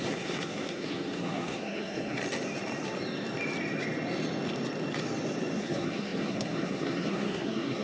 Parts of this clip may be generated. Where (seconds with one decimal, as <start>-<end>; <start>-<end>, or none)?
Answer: 0.0-2.2; 5.6-7.8